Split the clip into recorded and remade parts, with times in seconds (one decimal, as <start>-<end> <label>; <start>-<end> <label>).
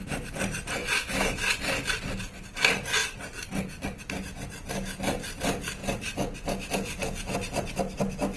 0.0-0.8 recorded; 0.8-1.5 remade; 1.5-8.4 recorded